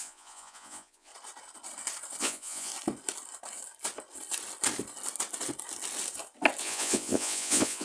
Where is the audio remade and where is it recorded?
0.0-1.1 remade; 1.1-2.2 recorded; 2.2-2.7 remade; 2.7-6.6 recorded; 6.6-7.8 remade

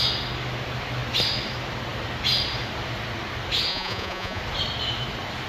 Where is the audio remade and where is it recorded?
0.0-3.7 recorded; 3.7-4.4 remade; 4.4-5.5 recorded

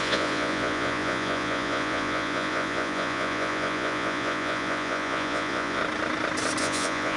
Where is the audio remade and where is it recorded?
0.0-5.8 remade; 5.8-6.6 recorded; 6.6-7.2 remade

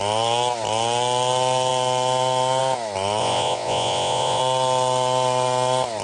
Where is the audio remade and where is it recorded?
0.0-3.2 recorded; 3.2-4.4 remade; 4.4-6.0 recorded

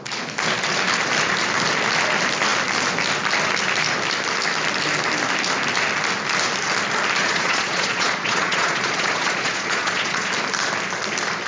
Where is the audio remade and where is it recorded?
0.0-7.2 recorded; 7.2-10.3 remade; 10.3-11.5 recorded